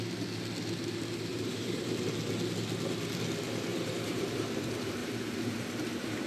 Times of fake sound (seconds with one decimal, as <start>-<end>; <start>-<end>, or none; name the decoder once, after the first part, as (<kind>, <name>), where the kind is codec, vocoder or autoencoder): 1.3-2.0 (vocoder, BigVGAN v2); 3.7-4.6; 5.0-6.3